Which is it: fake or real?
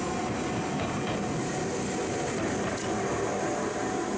real